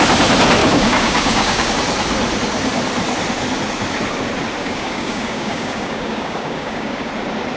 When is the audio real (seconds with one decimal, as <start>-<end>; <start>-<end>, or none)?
0.0-0.6; 1.7-4.6; 7.1-7.6